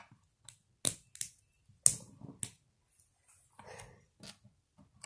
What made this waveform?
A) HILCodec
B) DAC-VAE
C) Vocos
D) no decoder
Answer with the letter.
D